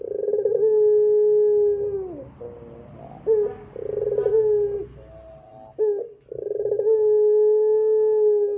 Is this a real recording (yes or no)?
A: yes